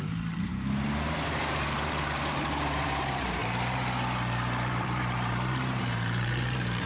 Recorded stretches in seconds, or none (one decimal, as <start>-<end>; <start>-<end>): 3.4-4.7